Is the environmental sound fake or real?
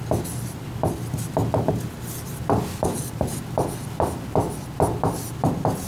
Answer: real